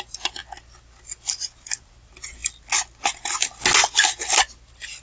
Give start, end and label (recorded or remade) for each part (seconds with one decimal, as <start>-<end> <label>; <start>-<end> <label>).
0.0-5.0 recorded